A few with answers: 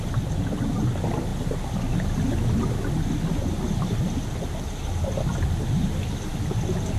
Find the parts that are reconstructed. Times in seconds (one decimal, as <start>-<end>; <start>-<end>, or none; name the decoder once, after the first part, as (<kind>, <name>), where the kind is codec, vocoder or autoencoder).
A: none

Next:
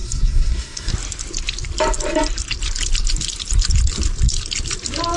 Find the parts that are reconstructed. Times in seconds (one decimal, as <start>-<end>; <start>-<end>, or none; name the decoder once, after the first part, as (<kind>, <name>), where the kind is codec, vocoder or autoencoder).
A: 0.0-0.9 (codec, SNAC)

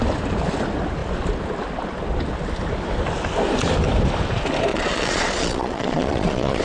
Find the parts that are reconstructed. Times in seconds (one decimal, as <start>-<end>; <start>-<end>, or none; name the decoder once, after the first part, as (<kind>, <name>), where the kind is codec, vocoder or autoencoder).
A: 4.7-6.6 (vocoder, Vocos)

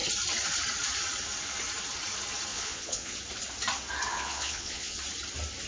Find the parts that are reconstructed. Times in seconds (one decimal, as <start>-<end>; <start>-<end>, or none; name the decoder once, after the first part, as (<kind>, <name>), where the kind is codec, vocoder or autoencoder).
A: 2.5-3.2 (vocoder, Vocos); 4.1-5.0

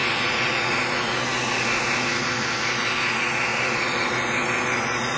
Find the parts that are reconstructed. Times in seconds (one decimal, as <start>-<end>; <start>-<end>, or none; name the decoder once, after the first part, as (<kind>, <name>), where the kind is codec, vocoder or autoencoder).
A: 3.5-4.1 (vocoder, BigVGAN v2)

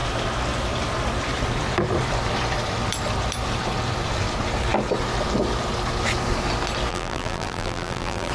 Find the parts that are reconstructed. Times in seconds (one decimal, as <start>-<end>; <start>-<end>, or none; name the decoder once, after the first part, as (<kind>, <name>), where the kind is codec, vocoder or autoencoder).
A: 6.9-8.3 (vocoder, BigVGAN v2)

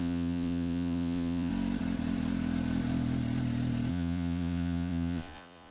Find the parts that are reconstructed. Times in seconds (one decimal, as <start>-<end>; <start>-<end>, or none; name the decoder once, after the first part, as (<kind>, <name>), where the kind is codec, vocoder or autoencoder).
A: 0.0-1.5 (vocoder, Vocos); 3.9-5.7

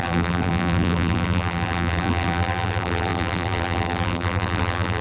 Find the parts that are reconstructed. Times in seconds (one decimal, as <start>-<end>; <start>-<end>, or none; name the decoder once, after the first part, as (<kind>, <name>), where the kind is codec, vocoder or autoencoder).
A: 0.0-5.0 (vocoder, BigVGAN v2)